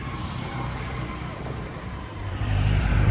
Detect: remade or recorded remade